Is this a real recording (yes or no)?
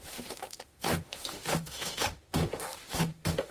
no